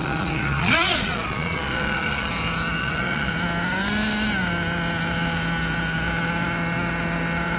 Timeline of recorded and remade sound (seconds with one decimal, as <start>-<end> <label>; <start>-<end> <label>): 0.0-2.3 remade; 2.3-2.8 recorded; 2.8-3.3 remade; 3.3-7.6 recorded